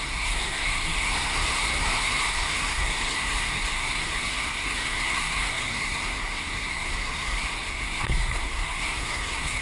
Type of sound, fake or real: fake